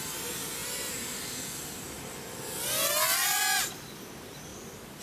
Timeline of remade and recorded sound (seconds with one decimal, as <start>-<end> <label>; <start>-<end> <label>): 0.0-5.0 recorded